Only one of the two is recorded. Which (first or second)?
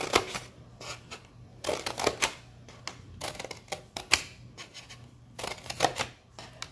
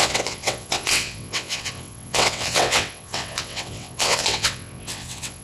first